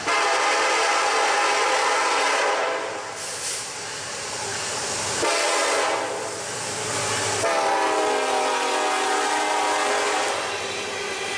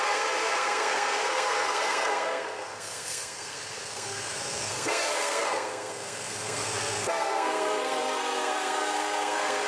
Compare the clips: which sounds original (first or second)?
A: first